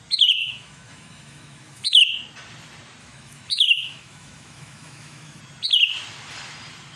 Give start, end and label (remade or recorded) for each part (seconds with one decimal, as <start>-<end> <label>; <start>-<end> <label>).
0.0-0.4 recorded; 0.4-2.0 remade; 2.0-3.0 recorded; 3.0-5.4 remade; 5.4-7.0 recorded